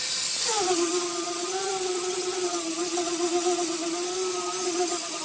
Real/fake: real